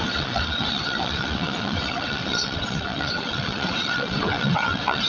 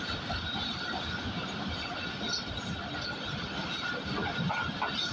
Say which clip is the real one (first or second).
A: second